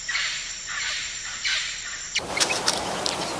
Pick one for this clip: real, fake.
fake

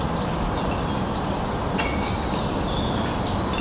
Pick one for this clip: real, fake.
real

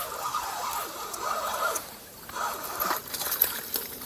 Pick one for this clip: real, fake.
fake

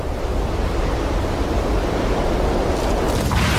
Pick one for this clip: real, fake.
real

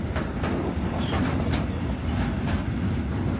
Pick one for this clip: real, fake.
real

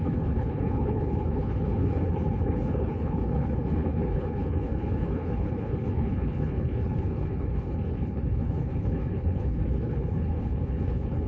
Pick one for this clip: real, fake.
fake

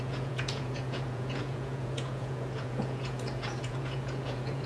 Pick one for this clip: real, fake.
fake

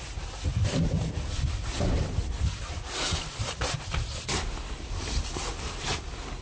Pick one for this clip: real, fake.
real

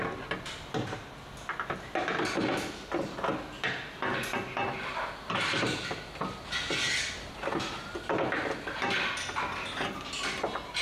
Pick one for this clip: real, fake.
real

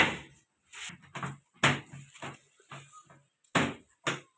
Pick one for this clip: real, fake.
real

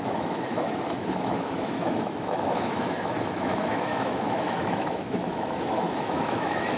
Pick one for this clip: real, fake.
fake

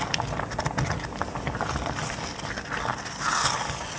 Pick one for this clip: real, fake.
real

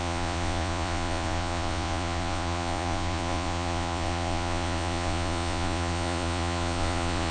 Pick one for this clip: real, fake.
fake